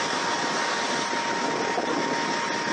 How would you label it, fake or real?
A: real